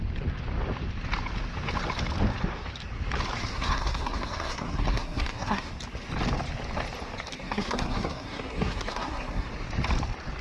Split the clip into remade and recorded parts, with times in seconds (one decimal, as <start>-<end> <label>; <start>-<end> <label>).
0.0-3.5 recorded; 3.5-5.7 remade; 5.7-7.4 recorded; 7.4-9.5 remade; 9.5-10.4 recorded